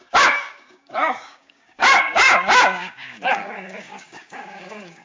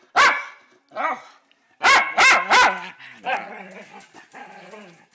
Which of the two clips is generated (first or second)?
first